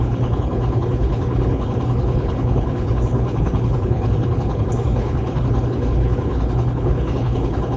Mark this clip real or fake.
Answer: fake